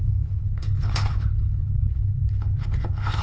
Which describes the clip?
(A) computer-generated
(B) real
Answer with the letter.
A